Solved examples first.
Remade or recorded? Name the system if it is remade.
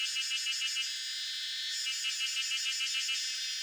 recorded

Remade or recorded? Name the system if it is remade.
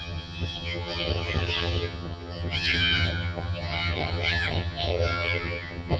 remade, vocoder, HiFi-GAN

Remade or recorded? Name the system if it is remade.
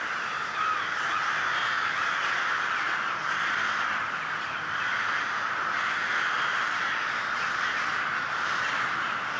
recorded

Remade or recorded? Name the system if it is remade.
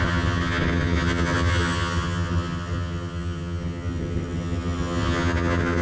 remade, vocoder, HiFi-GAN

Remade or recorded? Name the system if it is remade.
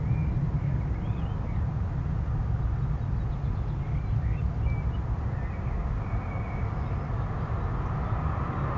recorded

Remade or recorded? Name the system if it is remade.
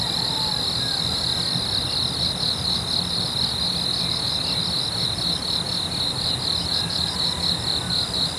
recorded